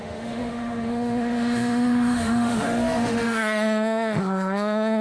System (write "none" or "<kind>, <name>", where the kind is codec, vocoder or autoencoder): autoencoder, DAC-VAE